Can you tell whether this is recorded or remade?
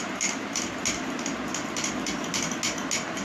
recorded